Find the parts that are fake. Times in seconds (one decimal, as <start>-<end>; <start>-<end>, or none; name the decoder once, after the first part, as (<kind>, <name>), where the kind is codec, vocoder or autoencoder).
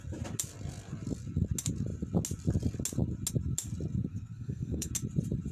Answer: 4.1-4.9 (codec, SNAC)